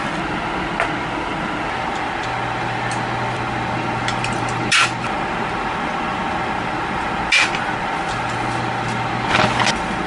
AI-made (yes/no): no